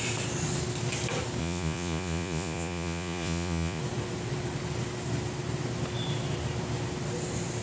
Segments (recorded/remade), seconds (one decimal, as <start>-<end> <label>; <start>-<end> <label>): 0.0-1.4 recorded; 1.4-3.8 remade; 3.8-7.6 recorded